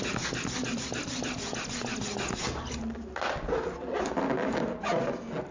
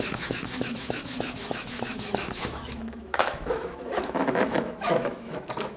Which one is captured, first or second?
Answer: first